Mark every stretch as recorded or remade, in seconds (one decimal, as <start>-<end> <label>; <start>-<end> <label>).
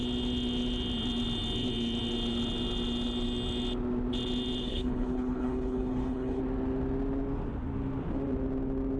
0.0-4.6 recorded; 4.6-6.4 remade; 6.4-9.0 recorded